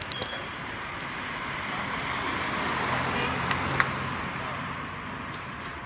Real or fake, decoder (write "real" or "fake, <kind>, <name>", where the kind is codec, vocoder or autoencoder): real